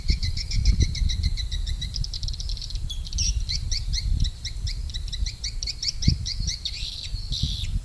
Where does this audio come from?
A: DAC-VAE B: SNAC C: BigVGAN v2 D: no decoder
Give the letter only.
C